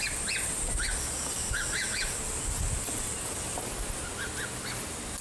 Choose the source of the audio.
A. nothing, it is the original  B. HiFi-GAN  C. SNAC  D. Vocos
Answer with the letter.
A